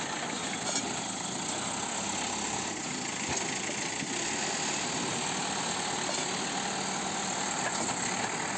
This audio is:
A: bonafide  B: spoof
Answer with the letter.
A